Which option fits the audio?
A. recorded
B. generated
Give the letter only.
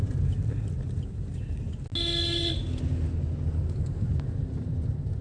A